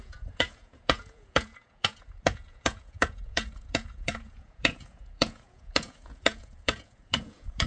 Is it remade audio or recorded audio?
remade